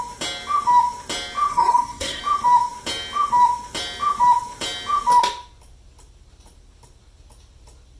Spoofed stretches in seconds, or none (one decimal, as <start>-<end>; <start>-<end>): 1.5-2.2